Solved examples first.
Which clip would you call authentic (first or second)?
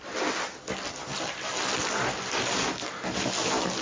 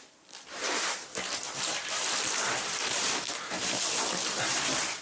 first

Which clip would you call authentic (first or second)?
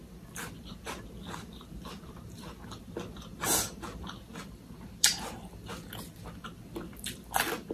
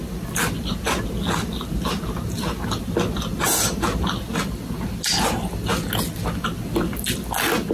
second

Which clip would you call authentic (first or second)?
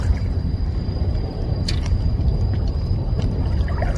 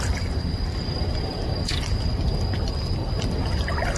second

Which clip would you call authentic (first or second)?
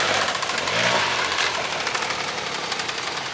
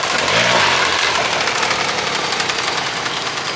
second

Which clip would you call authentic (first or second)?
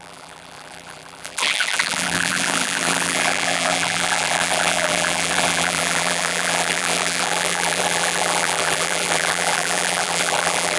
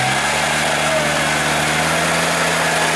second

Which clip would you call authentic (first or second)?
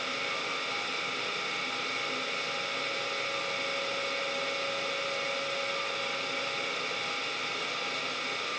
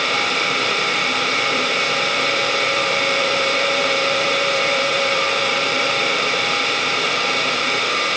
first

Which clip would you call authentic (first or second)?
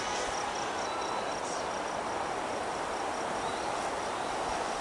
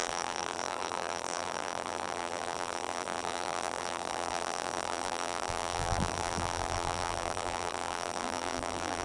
first